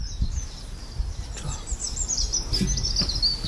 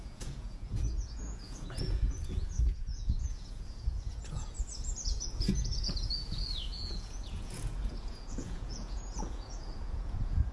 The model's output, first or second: second